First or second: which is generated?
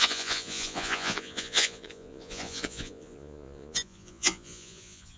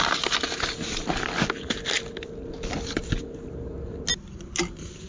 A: first